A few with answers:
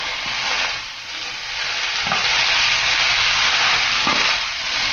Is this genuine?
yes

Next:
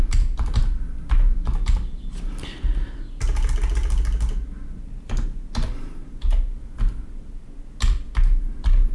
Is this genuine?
yes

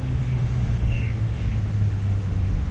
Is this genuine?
no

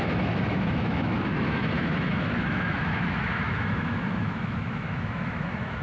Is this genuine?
no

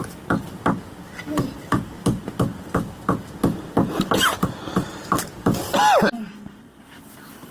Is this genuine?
yes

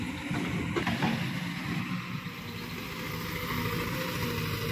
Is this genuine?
yes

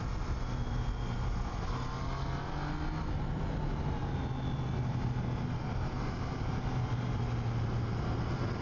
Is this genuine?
yes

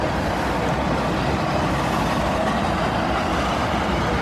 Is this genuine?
yes